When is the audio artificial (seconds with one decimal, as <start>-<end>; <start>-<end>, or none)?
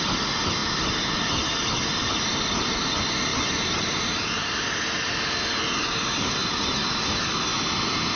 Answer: 3.3-4.6